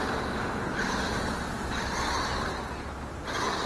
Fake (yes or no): no